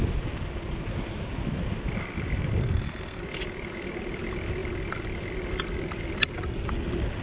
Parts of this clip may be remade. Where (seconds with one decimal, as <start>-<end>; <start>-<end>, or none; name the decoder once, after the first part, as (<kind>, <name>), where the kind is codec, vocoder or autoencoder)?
2.6-3.2 (codec, SNAC)